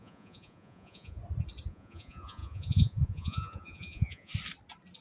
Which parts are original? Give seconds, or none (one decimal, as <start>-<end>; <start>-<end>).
1.2-1.7; 4.3-5.0